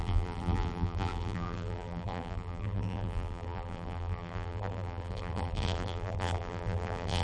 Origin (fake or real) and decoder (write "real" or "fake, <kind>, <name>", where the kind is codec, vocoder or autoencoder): fake, vocoder, BigVGAN v2